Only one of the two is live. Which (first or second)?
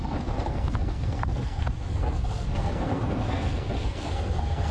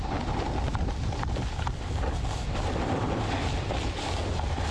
second